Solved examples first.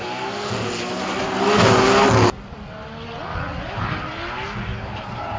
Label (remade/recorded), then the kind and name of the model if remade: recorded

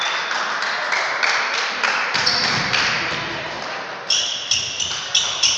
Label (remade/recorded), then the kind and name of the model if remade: recorded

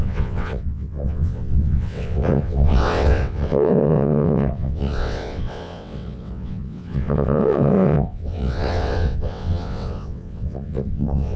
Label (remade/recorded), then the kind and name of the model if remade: remade, vocoder, WaveNeXt